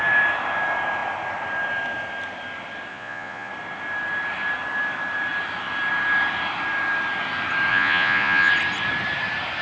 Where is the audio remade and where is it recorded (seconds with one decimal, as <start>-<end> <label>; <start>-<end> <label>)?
0.0-2.9 recorded; 2.9-3.5 remade; 3.5-7.7 recorded; 7.7-8.5 remade; 8.5-9.6 recorded

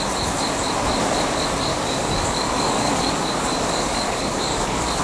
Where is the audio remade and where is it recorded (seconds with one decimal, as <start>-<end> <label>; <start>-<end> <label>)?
0.0-1.7 recorded; 1.7-5.0 remade